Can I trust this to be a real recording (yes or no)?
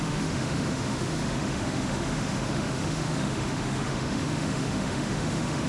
no